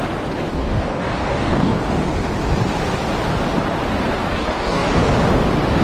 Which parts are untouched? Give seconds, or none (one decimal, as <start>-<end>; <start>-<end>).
0.0-0.5; 1.8-4.2; 5.1-5.8